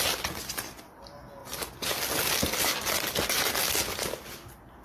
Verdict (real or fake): real